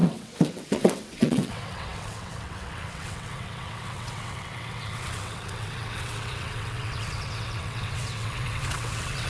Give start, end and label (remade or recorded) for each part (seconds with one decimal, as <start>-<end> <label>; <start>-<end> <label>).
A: 0.0-9.3 remade